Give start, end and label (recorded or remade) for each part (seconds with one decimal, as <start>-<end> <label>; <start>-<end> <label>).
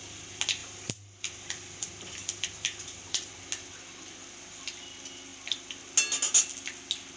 0.0-0.6 recorded; 0.6-3.3 remade; 3.3-5.3 recorded; 5.3-5.8 remade; 5.8-7.2 recorded